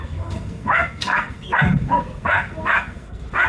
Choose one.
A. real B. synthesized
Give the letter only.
B